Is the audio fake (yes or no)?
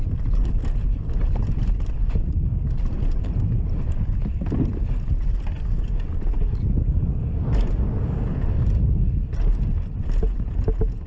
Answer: no